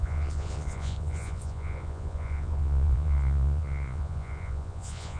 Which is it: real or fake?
fake